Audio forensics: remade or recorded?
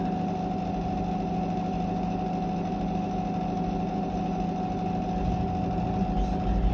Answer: recorded